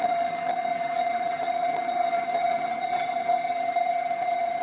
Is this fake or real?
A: fake